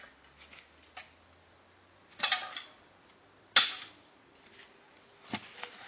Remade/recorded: recorded